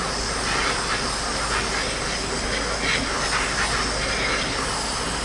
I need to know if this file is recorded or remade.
recorded